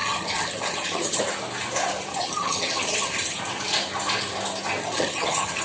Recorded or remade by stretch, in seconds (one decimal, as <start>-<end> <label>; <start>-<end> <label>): 0.0-1.2 remade; 1.2-2.1 recorded; 2.1-3.4 remade; 3.4-4.8 recorded; 4.8-5.6 remade